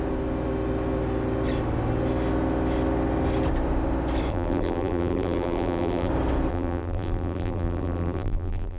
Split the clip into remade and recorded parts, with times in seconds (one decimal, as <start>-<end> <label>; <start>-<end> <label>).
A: 0.0-4.3 recorded; 4.3-6.1 remade; 6.1-6.5 recorded; 6.5-8.8 remade